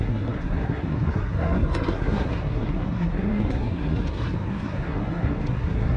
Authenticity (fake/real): fake